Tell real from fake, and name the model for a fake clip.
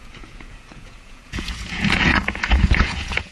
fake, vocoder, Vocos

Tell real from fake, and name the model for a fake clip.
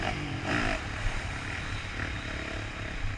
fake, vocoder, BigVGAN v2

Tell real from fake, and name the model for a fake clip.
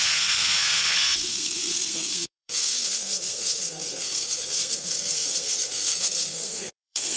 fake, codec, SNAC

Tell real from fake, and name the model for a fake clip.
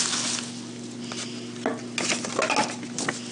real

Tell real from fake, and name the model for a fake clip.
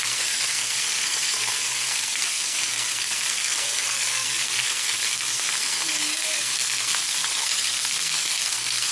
fake, codec, SNAC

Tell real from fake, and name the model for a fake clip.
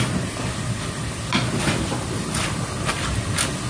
real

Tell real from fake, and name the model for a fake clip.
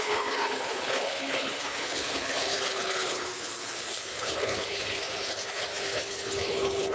fake, codec, HILCodec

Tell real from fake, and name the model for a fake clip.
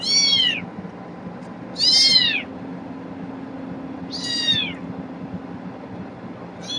real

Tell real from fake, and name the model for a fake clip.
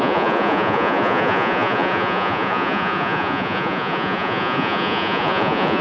fake, vocoder, Vocos